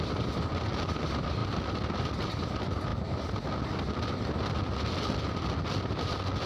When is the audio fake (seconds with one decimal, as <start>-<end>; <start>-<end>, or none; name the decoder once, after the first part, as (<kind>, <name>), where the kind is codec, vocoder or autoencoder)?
1.4-2.0 (vocoder, BigVGAN v2)